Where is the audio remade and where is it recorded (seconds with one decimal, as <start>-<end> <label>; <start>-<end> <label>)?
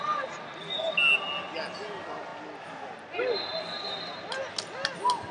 0.0-5.3 recorded